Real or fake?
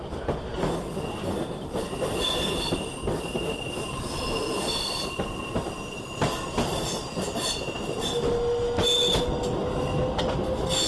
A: real